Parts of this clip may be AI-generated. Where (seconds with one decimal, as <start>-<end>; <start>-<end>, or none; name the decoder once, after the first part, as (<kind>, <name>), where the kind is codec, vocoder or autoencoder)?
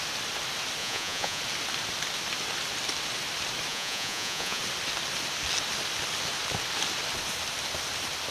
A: 0.8-1.4 (vocoder, Vocos); 3.7-4.6